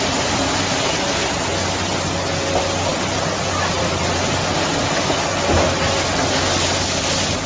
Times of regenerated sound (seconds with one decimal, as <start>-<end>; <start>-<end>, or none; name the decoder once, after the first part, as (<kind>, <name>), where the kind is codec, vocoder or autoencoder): none